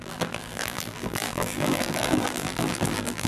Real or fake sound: fake